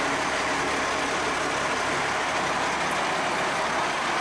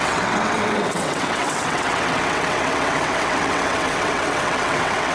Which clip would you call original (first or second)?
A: first